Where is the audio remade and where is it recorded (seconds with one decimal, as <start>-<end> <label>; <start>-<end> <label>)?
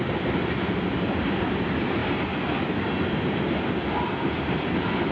0.0-5.1 recorded